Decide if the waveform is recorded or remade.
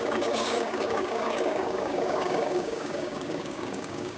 remade